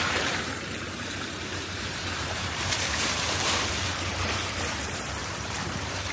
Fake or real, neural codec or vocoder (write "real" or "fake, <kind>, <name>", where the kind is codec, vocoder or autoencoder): fake, vocoder, BigVGAN v2